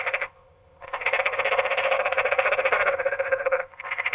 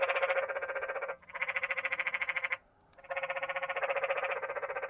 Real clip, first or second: second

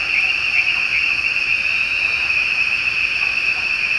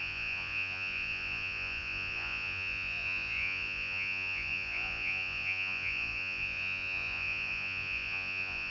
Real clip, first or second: first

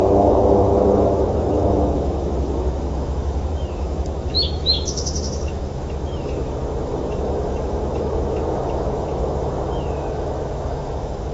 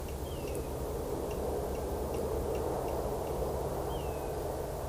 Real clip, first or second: second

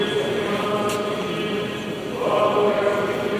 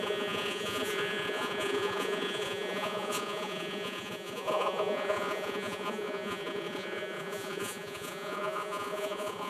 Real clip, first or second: first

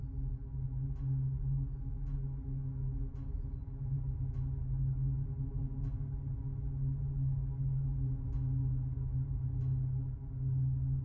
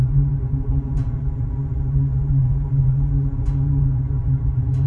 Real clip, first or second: first